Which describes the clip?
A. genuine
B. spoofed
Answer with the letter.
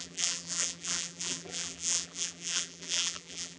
B